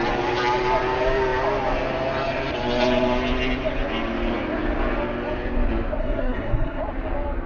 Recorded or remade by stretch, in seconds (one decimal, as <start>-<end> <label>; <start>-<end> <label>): 0.0-6.0 recorded; 6.0-6.8 remade; 6.8-7.5 recorded